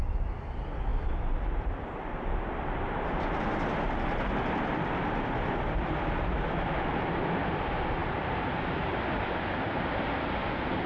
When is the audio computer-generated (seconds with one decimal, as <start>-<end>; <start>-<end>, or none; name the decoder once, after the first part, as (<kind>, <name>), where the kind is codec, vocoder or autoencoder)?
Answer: none